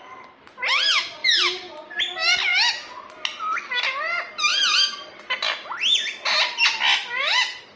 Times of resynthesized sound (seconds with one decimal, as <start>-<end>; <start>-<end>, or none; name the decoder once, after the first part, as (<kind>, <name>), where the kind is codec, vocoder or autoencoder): 1.2-2.0 (vocoder, BigVGAN v2); 4.5-6.6